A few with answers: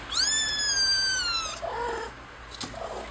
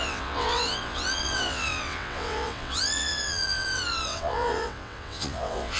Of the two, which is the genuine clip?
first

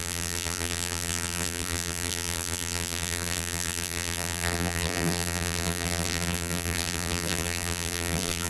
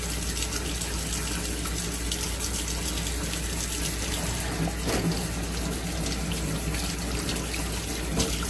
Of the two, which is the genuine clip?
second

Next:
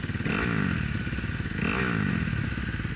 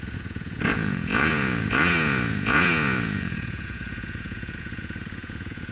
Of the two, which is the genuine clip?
first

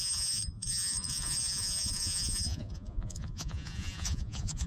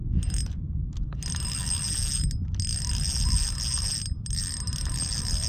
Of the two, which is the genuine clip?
second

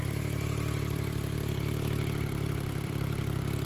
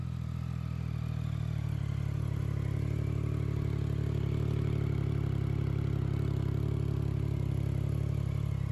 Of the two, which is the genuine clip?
second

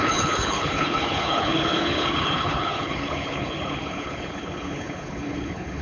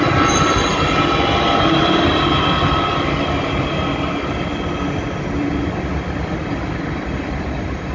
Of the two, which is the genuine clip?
second